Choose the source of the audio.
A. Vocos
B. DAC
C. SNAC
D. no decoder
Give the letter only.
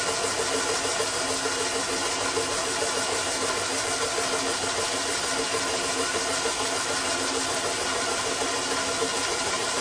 D